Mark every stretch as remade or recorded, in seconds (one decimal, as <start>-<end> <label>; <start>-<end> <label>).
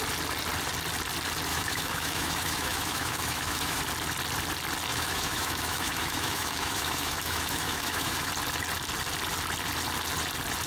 0.0-1.5 recorded; 1.5-3.8 remade; 3.8-4.9 recorded; 4.9-8.3 remade; 8.3-10.7 recorded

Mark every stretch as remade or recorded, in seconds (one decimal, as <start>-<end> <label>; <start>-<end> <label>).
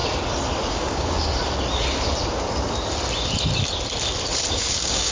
0.0-0.7 recorded; 0.7-1.4 remade; 1.4-4.5 recorded; 4.5-5.1 remade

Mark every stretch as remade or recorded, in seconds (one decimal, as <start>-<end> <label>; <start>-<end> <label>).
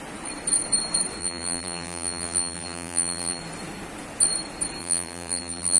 0.0-1.2 recorded; 1.2-3.4 remade; 3.4-4.8 recorded; 4.8-5.8 remade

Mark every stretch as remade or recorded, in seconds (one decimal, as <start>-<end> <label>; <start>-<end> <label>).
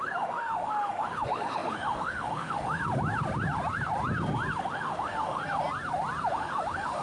0.0-2.8 remade; 2.8-4.6 recorded; 4.6-5.4 remade; 5.4-6.3 recorded; 6.3-7.0 remade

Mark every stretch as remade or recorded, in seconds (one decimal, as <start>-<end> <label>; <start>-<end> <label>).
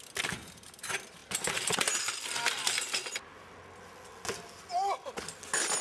0.0-5.8 recorded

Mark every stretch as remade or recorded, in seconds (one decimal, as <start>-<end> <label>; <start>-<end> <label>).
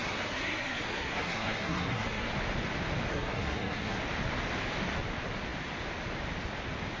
0.0-2.3 remade; 2.3-3.1 recorded; 3.1-4.0 remade; 4.0-7.0 recorded